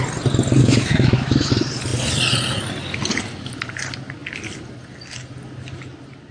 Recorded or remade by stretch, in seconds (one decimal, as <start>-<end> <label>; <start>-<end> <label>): 0.0-0.6 recorded; 0.6-1.5 remade; 1.5-6.3 recorded